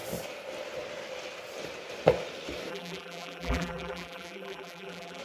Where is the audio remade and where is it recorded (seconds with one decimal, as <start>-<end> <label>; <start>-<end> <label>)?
0.0-2.7 recorded; 2.7-5.2 remade